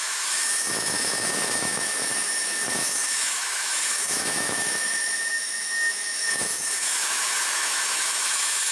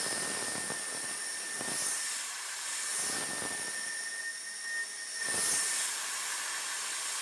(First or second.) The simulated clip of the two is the first